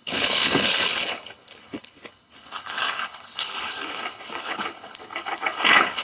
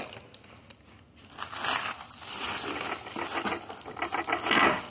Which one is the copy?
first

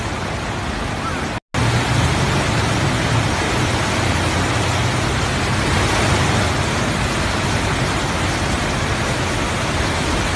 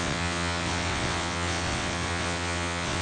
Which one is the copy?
second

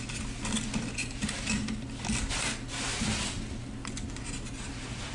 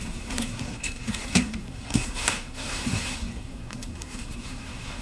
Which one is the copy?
second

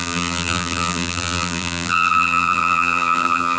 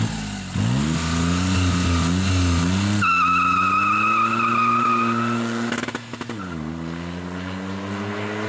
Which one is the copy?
first